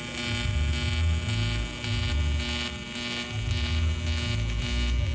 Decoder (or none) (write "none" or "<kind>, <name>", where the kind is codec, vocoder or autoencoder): none